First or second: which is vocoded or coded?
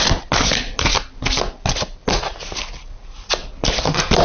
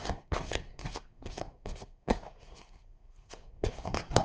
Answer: second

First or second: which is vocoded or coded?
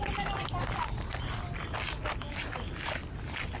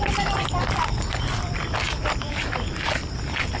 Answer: second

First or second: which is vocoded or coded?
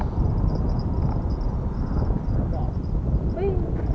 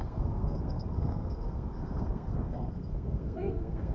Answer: second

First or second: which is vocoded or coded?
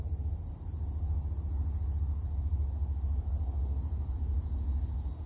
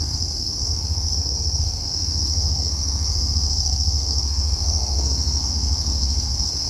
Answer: second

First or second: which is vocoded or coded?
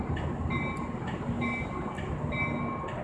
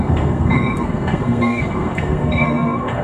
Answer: second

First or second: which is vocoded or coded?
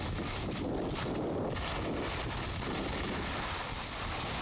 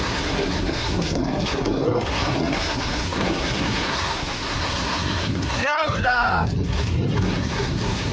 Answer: second